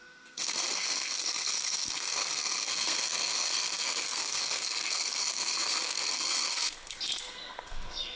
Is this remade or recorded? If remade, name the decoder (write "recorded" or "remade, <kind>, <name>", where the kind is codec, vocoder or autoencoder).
remade, codec, SNAC